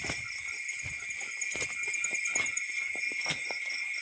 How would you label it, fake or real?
real